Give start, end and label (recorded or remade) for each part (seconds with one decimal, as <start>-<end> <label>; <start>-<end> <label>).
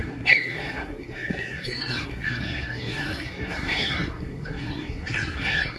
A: 0.0-5.8 remade